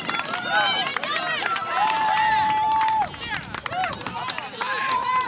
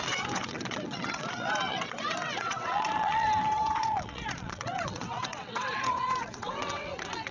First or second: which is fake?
second